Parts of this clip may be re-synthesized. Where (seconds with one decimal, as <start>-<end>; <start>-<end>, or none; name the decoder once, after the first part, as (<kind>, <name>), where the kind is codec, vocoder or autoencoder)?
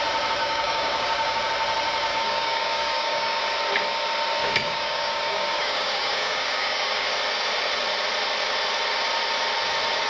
0.4-1.4 (codec, DAC); 2.1-3.4; 4.4-7.1